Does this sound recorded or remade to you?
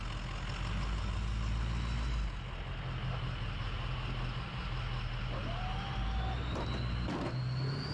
recorded